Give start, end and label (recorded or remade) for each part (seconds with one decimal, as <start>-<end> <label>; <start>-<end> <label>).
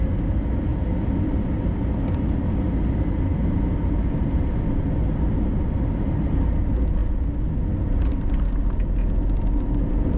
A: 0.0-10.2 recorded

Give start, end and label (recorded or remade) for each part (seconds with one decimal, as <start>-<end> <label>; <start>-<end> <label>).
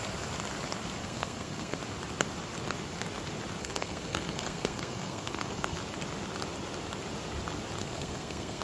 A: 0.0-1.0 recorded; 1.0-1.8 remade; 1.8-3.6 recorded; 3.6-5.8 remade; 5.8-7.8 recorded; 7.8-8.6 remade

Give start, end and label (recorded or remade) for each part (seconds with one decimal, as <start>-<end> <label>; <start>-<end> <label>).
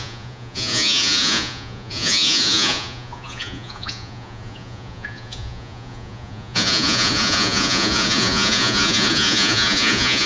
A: 0.0-10.3 remade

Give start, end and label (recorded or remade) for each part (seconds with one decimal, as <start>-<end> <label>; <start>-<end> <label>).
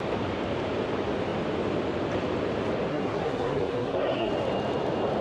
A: 0.0-2.9 recorded; 2.9-4.3 remade; 4.3-5.2 recorded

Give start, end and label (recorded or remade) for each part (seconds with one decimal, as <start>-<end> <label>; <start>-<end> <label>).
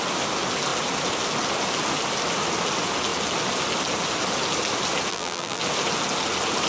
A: 0.0-5.1 recorded; 5.1-5.6 remade; 5.6-6.7 recorded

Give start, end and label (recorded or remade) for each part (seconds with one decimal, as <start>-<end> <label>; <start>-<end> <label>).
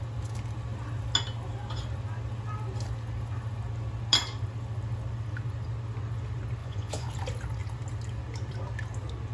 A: 0.0-6.6 recorded; 6.6-7.1 remade; 7.1-9.3 recorded